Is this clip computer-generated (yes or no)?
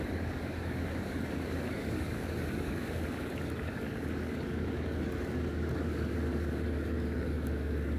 yes